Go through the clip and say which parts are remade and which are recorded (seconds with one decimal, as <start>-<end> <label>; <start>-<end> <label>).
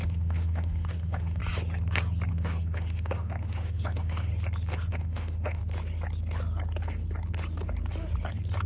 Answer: 0.0-1.4 remade; 1.4-2.3 recorded; 2.3-4.3 remade; 4.3-4.9 recorded; 4.9-5.6 remade; 5.6-8.7 recorded